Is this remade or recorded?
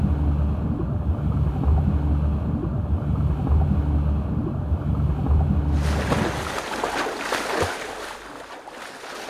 recorded